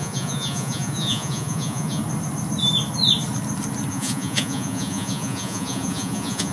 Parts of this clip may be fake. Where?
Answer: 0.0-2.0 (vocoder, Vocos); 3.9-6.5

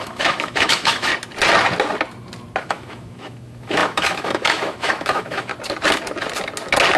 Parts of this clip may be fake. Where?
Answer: 0.0-1.1 (autoencoder, DAC-VAE); 2.6-5.5

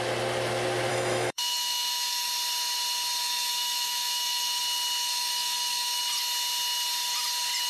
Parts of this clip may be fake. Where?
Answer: 0.9-2.3 (autoencoder, DAC-VAE); 3.2-4.6; 5.0-6.0

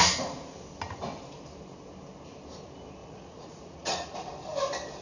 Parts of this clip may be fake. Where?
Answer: 3.0-4.3 (vocoder, Vocos)

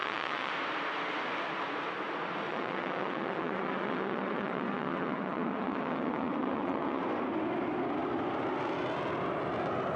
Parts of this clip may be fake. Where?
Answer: 0.0-0.5 (vocoder, WaveNeXt); 2.5-7.0

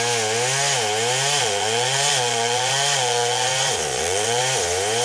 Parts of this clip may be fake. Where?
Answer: 1.4-4.4 (vocoder, Vocos)